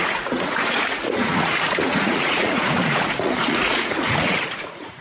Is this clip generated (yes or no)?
yes